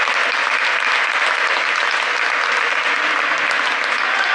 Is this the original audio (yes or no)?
yes